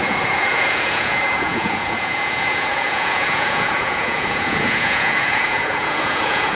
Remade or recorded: remade